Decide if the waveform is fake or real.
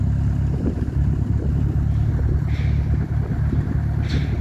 real